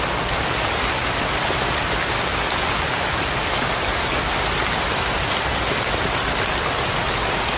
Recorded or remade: recorded